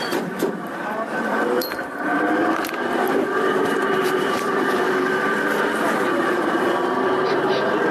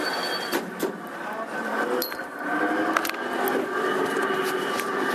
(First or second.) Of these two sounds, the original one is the second